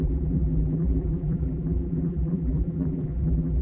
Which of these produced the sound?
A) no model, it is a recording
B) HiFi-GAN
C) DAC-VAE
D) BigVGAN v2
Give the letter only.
D